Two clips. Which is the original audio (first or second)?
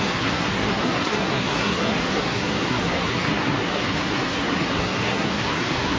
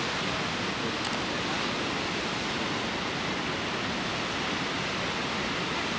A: second